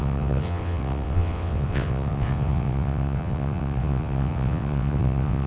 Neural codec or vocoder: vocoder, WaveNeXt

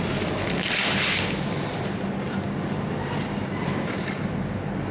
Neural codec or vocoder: none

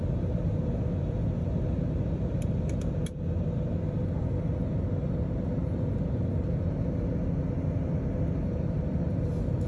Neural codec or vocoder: none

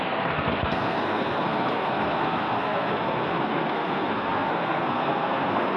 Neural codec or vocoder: codec, SNAC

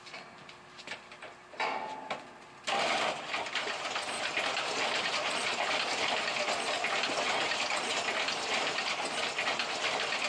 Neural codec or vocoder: none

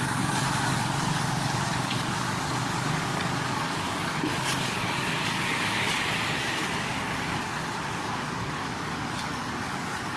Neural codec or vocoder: codec, DAC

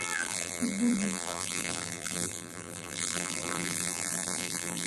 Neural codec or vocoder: vocoder, BigVGAN v2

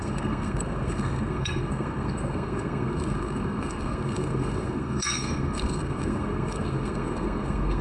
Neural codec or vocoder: codec, SNAC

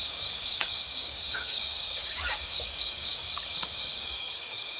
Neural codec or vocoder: codec, DAC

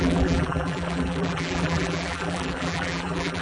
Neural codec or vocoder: vocoder, BigVGAN v2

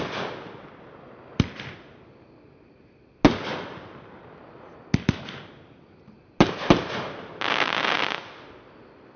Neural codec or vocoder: none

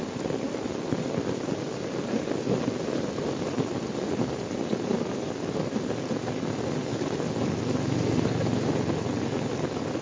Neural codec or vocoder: none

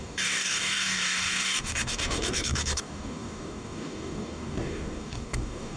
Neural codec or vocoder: codec, DAC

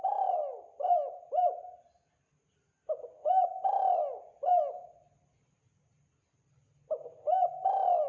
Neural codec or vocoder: none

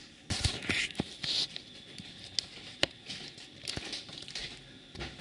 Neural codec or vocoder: none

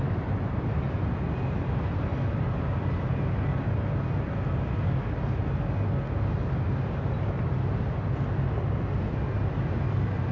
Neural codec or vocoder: none